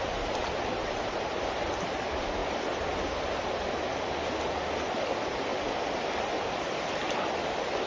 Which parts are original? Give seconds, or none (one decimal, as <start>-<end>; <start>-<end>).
0.0-7.9